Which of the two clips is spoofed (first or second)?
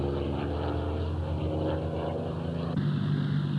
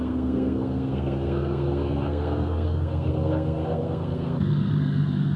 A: second